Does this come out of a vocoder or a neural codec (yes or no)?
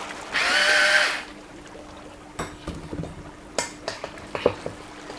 no